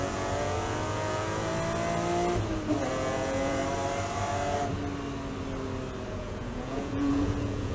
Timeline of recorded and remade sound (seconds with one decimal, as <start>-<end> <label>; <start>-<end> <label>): 0.0-1.5 remade; 1.5-2.9 recorded; 2.9-3.6 remade; 3.6-6.1 recorded; 6.1-7.7 remade